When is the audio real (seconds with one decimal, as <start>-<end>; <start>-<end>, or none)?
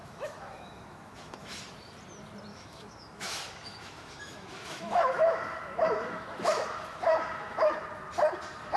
1.6-2.5; 7.7-8.8